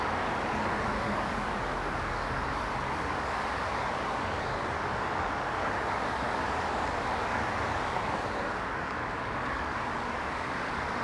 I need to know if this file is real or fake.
fake